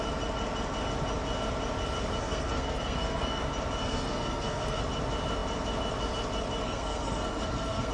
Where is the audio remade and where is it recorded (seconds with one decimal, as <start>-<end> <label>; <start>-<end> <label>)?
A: 0.0-2.2 recorded; 2.2-3.4 remade; 3.4-3.8 recorded; 3.8-4.8 remade; 4.8-6.6 recorded; 6.6-7.9 remade